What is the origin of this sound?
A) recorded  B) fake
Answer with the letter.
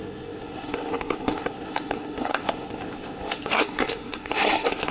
B